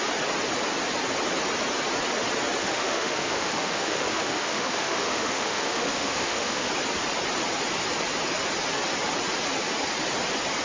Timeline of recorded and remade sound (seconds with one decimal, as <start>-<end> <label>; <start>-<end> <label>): 0.0-2.6 recorded; 2.6-6.7 remade; 6.7-10.6 recorded